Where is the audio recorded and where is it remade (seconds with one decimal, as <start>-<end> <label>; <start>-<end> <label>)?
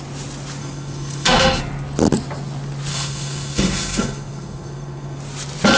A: 0.0-0.6 recorded; 0.6-1.6 remade; 1.6-2.9 recorded; 2.9-5.2 remade; 5.2-5.8 recorded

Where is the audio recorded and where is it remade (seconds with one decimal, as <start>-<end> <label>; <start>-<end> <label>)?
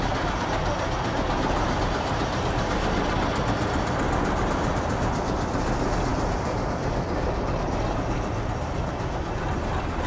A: 0.0-10.1 recorded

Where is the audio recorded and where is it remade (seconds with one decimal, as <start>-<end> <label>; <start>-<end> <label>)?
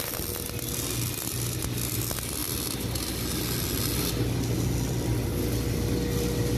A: 0.0-6.6 recorded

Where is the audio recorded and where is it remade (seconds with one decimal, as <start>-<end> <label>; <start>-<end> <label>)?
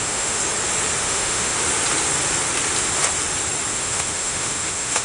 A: 0.0-0.4 remade; 0.4-1.0 recorded; 1.0-1.5 remade; 1.5-3.7 recorded; 3.7-5.0 remade